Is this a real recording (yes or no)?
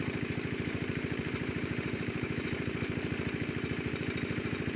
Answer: no